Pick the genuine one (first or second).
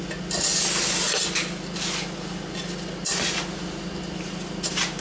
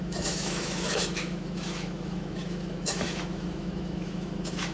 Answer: first